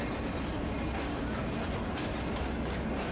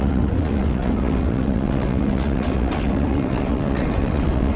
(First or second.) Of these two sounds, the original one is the first